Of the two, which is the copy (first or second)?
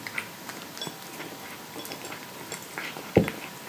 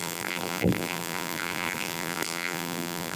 second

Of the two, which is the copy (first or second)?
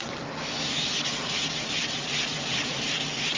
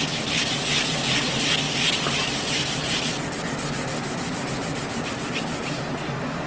second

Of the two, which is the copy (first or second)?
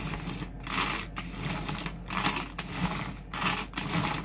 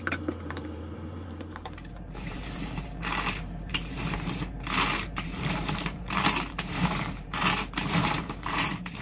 second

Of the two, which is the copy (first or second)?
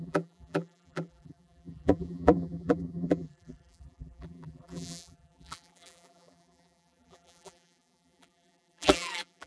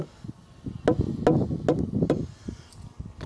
first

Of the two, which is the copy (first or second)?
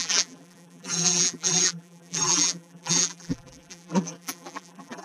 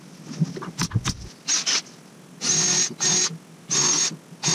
first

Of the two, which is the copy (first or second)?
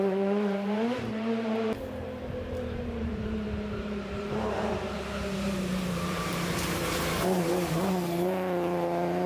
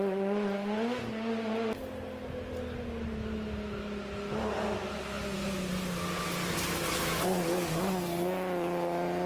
first